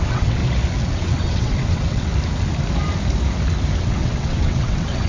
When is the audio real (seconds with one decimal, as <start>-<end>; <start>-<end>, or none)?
0.4-0.9; 2.1-3.8